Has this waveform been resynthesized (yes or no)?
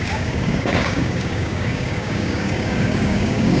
yes